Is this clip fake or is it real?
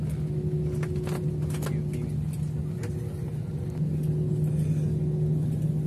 real